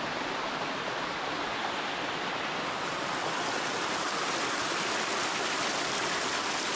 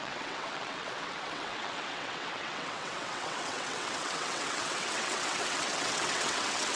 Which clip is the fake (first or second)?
second